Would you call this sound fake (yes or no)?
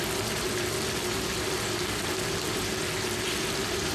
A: no